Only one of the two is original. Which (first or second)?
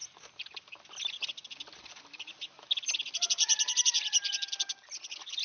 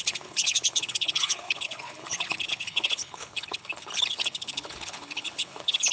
first